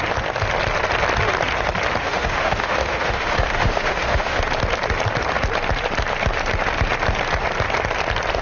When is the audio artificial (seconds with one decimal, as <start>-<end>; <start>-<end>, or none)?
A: 2.0-4.4